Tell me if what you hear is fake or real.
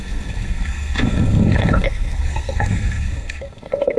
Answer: fake